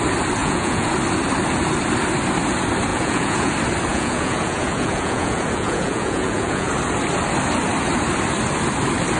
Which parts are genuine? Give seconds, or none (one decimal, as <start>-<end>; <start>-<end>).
0.0-0.4; 0.9-2.9; 3.5-3.9; 6.7-9.2